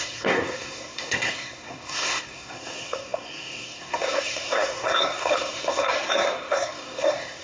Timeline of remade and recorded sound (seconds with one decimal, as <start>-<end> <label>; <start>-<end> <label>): 0.0-7.4 remade